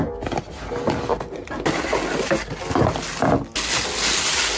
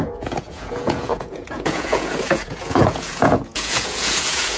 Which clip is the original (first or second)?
first